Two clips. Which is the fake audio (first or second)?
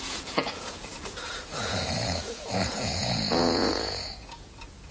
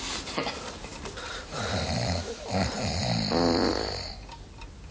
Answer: first